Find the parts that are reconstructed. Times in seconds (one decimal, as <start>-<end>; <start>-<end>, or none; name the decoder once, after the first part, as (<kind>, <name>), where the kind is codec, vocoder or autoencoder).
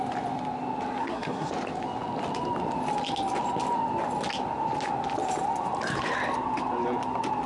1.0-1.5 (codec, SNAC)